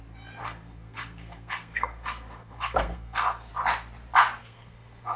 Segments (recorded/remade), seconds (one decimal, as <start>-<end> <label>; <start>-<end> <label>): 0.0-0.4 recorded; 0.4-3.5 remade; 3.5-4.4 recorded; 4.4-5.2 remade